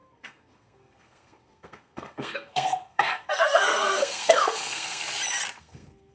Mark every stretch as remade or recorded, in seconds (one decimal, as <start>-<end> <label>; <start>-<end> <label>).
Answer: 0.0-5.0 remade; 5.0-5.6 recorded; 5.6-6.1 remade

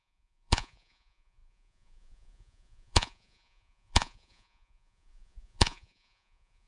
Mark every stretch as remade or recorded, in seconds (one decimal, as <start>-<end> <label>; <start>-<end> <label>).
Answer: 0.0-6.7 remade

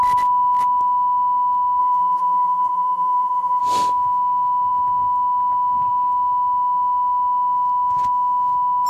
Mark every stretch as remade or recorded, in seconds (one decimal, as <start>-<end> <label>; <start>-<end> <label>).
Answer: 0.0-1.8 recorded; 1.8-3.6 remade; 3.6-8.9 recorded

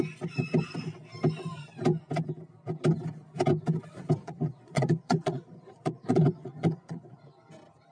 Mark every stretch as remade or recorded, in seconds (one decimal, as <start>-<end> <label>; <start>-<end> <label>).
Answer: 0.0-4.2 recorded; 4.2-7.2 remade; 7.2-7.9 recorded

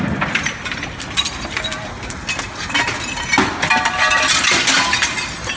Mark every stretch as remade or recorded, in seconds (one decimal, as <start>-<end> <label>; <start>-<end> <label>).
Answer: 0.0-5.6 recorded

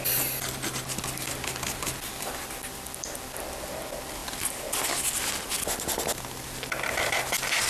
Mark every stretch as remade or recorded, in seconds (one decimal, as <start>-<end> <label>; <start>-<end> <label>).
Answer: 0.0-7.7 recorded